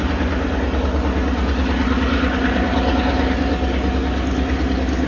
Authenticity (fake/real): real